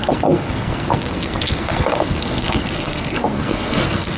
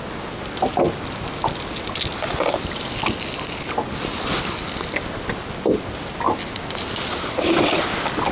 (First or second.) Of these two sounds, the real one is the second